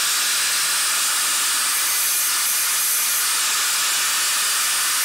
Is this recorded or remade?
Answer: recorded